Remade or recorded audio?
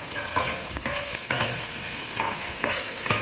remade